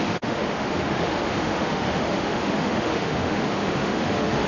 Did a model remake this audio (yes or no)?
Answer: yes